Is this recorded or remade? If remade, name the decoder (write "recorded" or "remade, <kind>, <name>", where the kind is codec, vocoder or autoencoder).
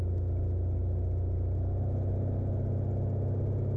recorded